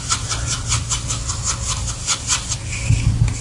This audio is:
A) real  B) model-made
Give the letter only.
A